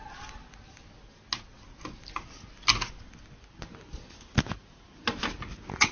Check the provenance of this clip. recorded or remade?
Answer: recorded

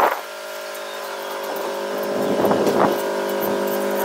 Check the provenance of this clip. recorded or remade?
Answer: recorded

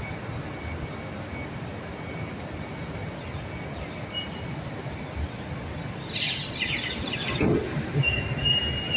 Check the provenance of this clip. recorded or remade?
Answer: recorded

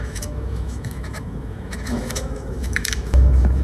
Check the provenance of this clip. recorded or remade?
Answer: remade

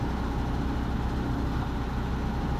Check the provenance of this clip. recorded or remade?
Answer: recorded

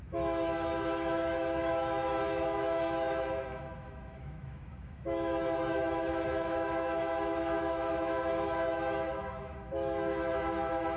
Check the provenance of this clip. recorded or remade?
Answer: remade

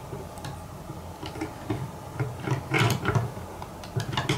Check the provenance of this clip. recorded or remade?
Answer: recorded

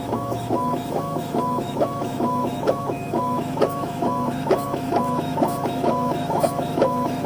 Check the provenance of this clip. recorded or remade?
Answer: remade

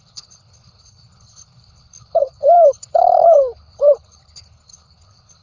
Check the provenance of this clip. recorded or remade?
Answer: remade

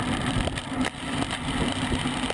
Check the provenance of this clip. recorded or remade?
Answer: recorded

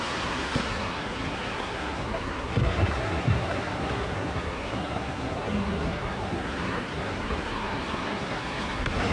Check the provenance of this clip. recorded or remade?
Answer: remade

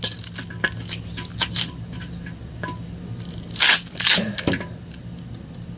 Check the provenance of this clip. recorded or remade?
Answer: recorded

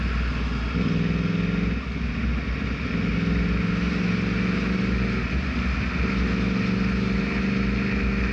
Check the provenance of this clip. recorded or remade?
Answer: recorded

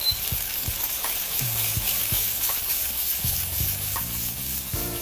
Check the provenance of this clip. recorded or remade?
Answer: remade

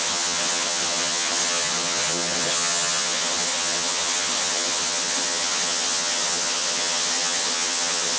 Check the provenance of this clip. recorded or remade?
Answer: remade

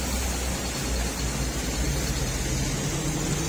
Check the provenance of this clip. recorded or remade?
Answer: recorded